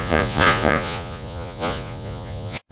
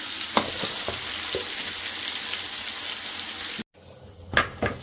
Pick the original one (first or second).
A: second